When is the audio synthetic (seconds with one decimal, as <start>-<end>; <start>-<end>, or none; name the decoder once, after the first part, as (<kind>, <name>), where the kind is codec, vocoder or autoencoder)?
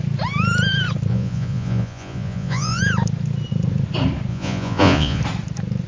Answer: 1.1-2.8 (vocoder, Vocos); 4.3-5.2